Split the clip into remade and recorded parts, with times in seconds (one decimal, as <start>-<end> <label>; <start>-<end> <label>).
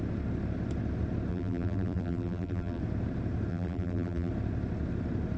0.0-1.3 recorded; 1.3-2.8 remade; 2.8-3.5 recorded; 3.5-4.3 remade; 4.3-5.4 recorded